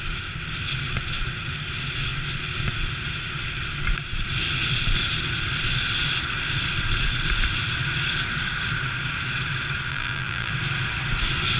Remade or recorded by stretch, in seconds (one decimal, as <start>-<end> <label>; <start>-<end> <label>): 0.0-9.9 recorded; 9.9-10.5 remade; 10.5-11.6 recorded

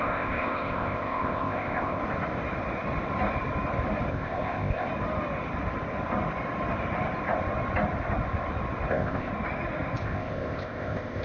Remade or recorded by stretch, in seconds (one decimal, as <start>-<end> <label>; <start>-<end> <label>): 0.0-2.0 remade; 2.0-4.1 recorded; 4.1-4.9 remade; 4.9-8.9 recorded; 8.9-9.3 remade; 9.3-10.0 recorded; 10.0-11.2 remade

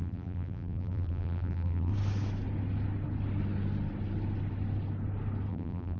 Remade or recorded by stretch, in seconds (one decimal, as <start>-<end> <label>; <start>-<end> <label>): 0.0-1.9 remade; 1.9-5.5 recorded; 5.5-6.0 remade